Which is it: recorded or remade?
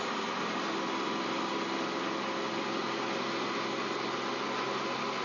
recorded